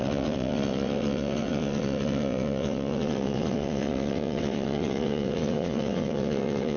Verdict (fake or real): fake